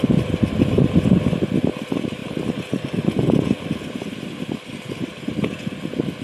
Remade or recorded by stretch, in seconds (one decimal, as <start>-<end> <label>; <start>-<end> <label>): 0.0-6.2 recorded